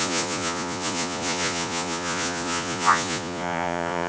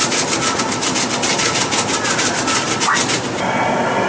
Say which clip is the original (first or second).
second